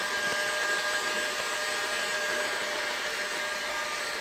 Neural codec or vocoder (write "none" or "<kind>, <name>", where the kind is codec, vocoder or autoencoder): none